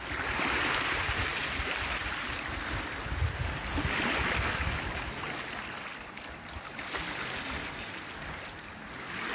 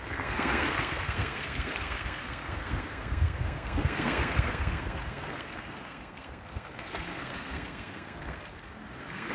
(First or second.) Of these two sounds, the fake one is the second